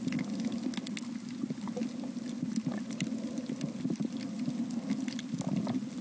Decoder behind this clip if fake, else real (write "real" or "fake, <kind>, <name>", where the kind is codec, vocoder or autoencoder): real